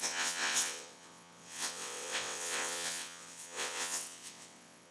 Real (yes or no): no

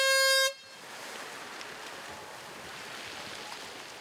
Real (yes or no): yes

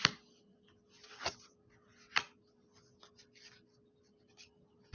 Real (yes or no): yes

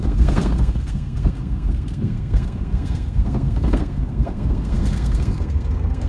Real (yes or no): no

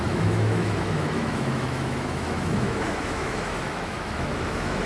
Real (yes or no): no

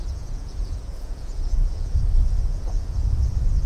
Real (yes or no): no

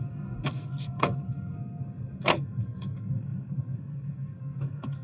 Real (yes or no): no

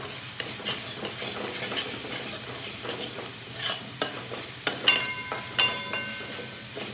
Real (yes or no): yes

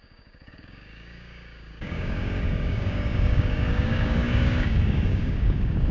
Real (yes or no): no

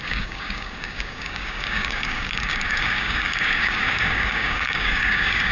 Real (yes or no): no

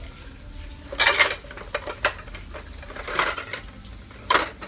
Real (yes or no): yes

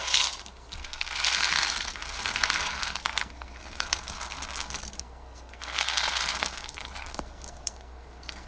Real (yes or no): no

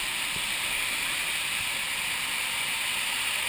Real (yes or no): yes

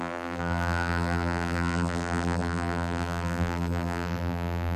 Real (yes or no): no